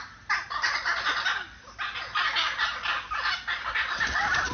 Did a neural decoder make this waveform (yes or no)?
no